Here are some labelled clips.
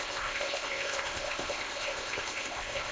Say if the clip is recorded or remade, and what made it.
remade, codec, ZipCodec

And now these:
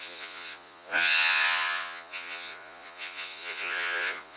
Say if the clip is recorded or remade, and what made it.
remade, vocoder, Vocos